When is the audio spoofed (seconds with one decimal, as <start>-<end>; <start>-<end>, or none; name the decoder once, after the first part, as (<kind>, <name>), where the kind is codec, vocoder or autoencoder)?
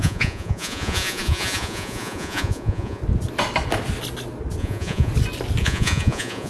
0.0-3.0 (vocoder, Vocos); 4.6-5.1; 5.6-6.5